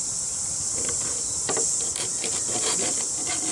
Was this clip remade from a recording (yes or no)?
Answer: no